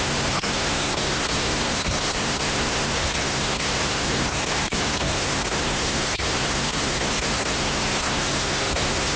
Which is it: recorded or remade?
remade